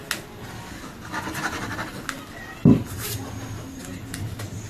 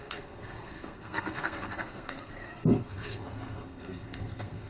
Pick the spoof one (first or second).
second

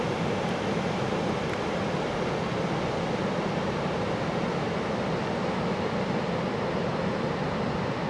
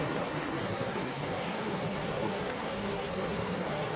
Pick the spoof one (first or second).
second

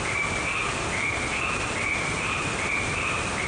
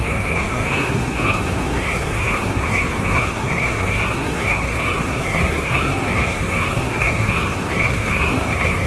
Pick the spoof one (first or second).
second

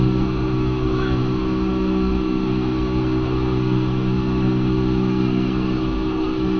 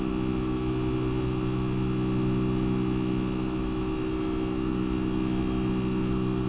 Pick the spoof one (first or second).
first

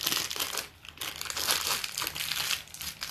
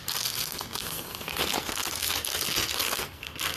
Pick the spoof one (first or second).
second